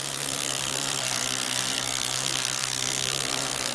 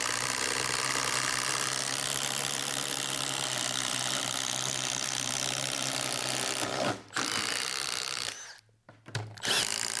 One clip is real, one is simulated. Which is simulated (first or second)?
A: first